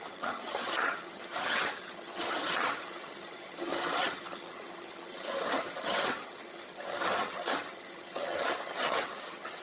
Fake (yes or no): yes